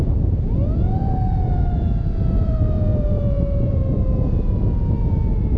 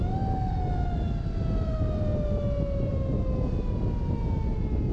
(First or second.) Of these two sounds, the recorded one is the second